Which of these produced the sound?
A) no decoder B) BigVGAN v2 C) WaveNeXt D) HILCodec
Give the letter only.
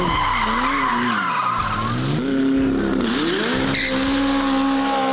A